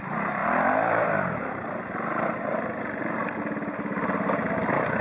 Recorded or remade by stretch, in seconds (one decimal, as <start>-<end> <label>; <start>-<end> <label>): 0.0-0.4 recorded; 0.4-3.4 remade; 3.4-5.0 recorded